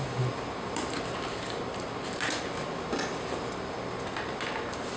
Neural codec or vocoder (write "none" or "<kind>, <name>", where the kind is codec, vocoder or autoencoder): none